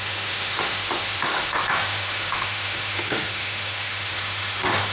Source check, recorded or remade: remade